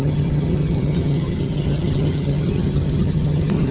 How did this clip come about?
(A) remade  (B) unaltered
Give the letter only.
A